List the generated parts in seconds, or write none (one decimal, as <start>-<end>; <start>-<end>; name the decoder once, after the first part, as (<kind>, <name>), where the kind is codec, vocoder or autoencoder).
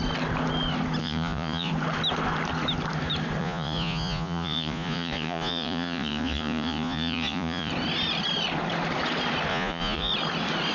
1.0-1.7 (vocoder, Vocos); 3.4-7.7; 9.5-10.1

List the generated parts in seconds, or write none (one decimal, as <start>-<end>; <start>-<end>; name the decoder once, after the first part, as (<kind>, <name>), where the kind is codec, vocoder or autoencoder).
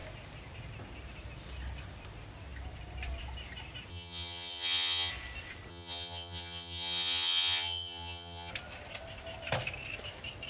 3.9-5.1 (vocoder, HiFi-GAN); 5.7-8.5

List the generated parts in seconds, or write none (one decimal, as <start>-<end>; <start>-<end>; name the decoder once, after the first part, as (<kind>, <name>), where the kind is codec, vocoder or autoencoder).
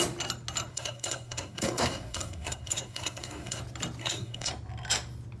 0.7-3.6 (codec, SNAC); 4.0-4.5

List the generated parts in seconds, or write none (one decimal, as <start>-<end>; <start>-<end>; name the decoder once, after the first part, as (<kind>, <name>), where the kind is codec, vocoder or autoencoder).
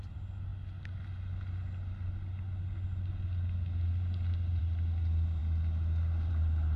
none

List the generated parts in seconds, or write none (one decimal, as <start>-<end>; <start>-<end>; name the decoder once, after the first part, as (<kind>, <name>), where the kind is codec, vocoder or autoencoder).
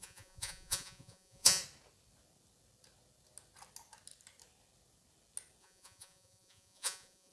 0.0-1.6 (vocoder, Vocos); 5.6-7.3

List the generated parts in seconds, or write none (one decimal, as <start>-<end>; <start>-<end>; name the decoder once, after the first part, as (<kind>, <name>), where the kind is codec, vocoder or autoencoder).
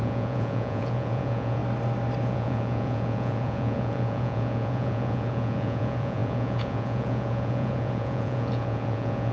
0.0-1.6 (vocoder, Vocos); 2.2-9.3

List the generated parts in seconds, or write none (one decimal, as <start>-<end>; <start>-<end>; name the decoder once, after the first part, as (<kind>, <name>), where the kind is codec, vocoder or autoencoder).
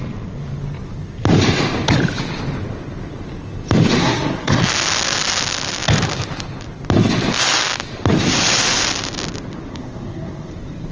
4.0-4.6 (codec, SNAC); 9.7-10.5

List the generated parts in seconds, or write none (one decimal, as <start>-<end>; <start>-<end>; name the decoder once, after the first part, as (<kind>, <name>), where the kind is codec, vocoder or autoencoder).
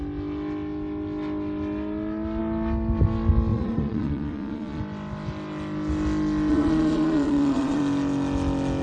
3.5-4.8 (vocoder, Vocos); 6.5-7.8